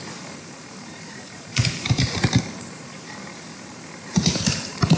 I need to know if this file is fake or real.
fake